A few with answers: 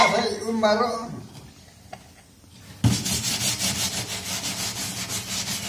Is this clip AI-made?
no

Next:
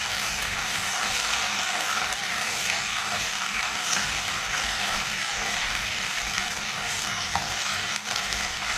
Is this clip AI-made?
yes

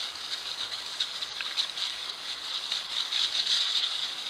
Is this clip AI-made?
yes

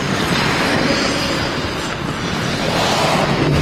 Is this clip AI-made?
no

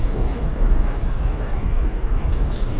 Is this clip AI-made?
yes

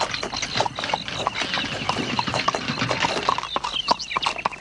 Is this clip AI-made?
no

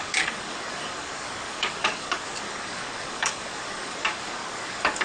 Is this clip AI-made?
yes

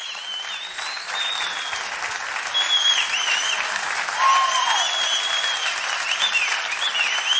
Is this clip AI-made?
no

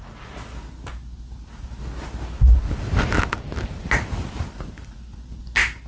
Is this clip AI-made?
no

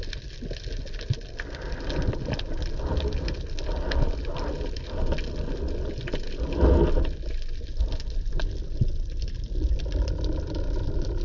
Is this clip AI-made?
no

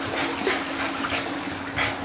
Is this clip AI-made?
no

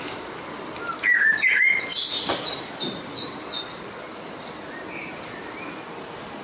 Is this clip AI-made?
no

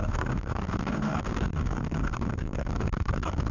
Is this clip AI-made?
yes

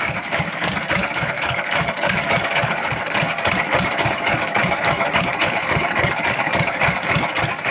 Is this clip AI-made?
yes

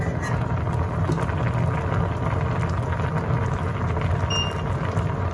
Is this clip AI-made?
no